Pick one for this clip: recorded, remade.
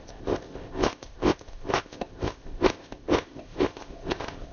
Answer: remade